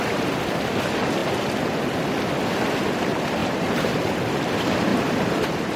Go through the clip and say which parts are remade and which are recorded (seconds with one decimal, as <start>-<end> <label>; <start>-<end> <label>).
0.0-4.9 recorded; 4.9-5.8 remade